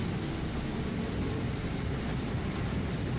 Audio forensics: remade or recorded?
recorded